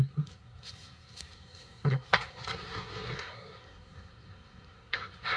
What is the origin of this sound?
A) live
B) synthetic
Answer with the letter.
B